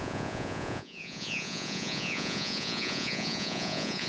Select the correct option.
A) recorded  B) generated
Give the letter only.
B